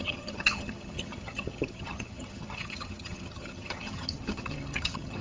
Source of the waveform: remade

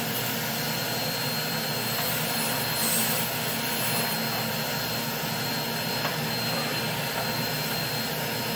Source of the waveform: recorded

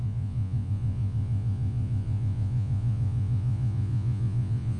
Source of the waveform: remade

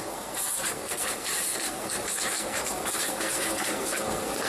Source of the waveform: remade